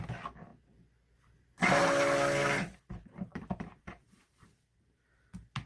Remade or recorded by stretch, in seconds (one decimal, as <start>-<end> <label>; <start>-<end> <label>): 0.0-3.3 recorded; 3.3-5.3 remade; 5.3-5.7 recorded